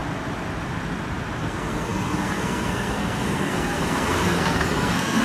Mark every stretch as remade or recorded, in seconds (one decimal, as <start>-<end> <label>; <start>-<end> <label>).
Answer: 0.0-1.4 recorded; 1.4-5.2 remade